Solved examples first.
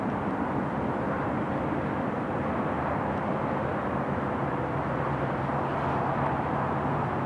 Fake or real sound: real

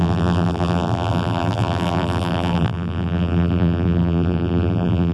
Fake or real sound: fake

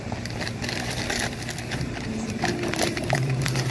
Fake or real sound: fake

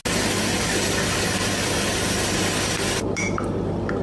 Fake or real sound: real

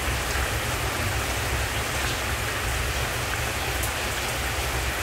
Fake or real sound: real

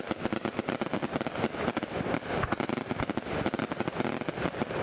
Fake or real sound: real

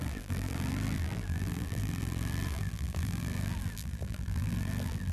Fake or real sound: fake